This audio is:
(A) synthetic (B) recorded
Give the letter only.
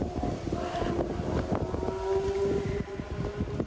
B